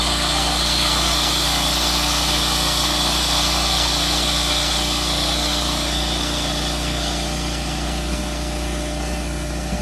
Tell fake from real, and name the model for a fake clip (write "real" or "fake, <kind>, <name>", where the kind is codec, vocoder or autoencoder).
fake, codec, SNAC